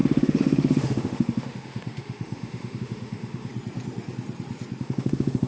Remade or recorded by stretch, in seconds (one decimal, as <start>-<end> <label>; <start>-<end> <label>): 0.0-3.5 remade; 3.5-4.8 recorded; 4.8-5.5 remade